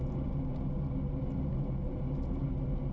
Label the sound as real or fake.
real